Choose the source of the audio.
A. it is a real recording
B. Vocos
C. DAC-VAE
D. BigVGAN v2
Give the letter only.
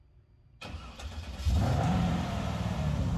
D